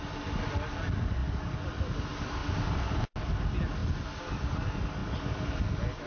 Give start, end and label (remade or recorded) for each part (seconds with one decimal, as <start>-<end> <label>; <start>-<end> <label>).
0.0-6.1 recorded